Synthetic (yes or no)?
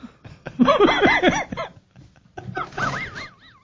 no